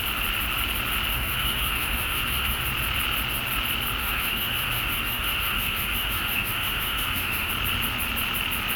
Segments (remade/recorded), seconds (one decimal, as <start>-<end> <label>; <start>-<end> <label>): 0.0-1.1 recorded; 1.1-2.6 remade; 2.6-4.0 recorded; 4.0-7.5 remade; 7.5-8.8 recorded